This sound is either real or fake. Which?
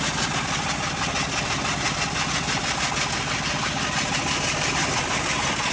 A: real